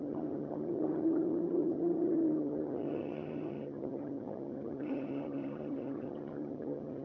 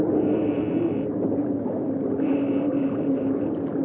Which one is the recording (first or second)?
second